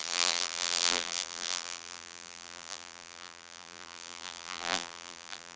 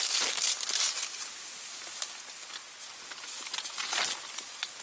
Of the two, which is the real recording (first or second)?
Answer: second